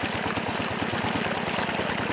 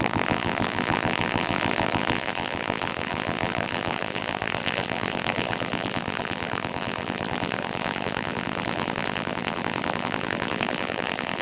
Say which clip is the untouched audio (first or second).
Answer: first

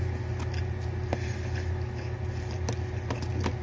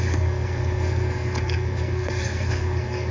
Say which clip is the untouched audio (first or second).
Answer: first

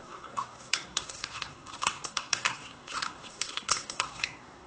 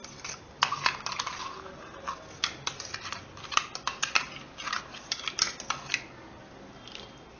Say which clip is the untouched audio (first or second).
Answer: second